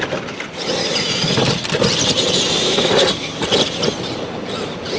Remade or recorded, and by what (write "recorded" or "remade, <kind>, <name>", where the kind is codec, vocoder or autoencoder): remade, vocoder, BigVGAN v2